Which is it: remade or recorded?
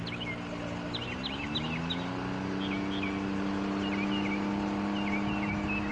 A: recorded